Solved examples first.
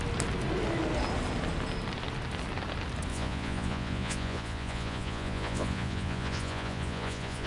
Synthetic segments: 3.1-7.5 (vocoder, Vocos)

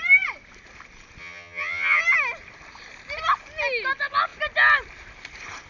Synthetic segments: 1.2-2.0 (vocoder, HiFi-GAN)